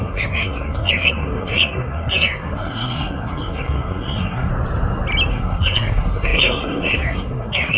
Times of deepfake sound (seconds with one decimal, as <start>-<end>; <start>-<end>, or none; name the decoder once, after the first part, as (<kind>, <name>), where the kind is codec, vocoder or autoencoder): 0.0-4.5 (codec, SNAC); 5.3-7.8